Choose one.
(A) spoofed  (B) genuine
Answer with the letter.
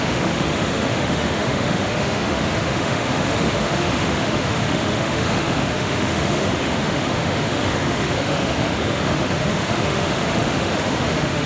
A